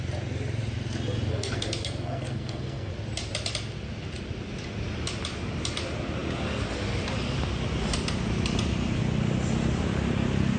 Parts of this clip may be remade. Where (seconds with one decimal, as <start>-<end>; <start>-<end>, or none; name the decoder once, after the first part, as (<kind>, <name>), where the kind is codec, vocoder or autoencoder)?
1.3-2.9 (codec, SNAC)